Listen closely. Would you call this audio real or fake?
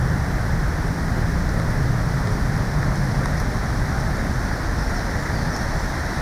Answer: real